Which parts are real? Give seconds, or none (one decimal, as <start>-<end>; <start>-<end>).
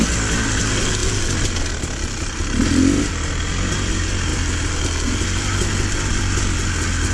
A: 0.0-7.1